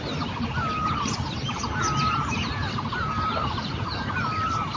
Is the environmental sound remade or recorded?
recorded